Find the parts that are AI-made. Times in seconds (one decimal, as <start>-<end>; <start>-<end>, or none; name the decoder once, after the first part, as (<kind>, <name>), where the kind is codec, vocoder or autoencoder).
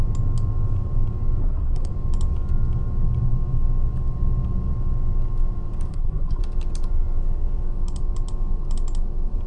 1.4-1.9 (codec, SNAC); 5.9-6.4